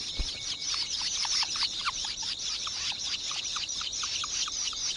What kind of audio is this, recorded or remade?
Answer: remade